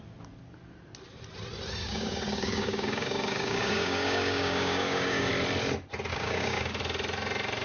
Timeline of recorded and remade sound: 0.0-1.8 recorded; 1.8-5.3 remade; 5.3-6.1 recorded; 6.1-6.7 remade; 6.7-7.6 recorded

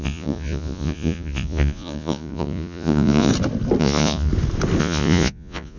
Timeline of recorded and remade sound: 0.0-3.3 remade; 3.3-3.8 recorded; 3.8-4.3 remade; 4.3-4.8 recorded; 4.8-5.8 remade

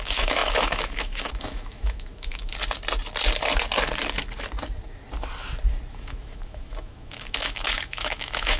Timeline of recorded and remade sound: 0.0-2.5 remade; 2.5-5.9 recorded; 5.9-8.6 remade

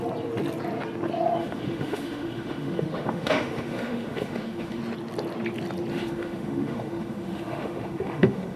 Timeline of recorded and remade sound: 0.0-1.4 recorded; 1.4-4.8 remade; 4.8-5.9 recorded; 5.9-8.6 remade

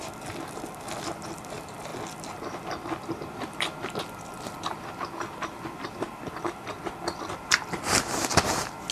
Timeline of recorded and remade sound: 0.0-8.9 recorded

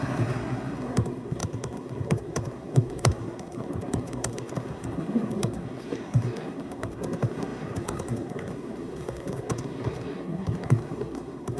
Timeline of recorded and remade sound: 0.0-11.6 remade

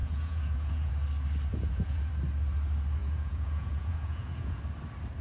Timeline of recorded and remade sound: 0.0-0.9 remade; 0.9-1.5 recorded; 1.5-2.1 remade; 2.1-3.0 recorded; 3.0-4.6 remade; 4.6-5.2 recorded